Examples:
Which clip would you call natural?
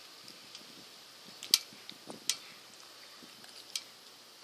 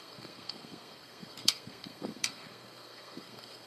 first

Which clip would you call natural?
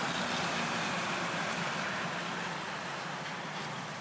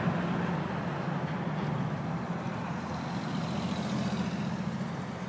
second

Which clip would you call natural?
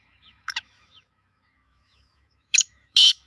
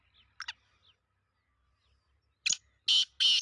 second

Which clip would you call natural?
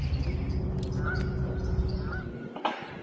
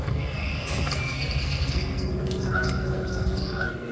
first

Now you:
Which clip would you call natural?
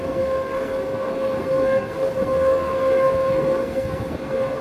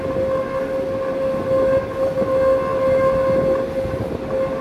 second